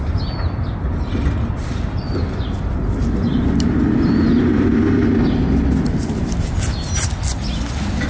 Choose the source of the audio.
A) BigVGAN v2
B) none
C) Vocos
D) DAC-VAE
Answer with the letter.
B